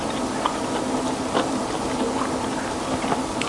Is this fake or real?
real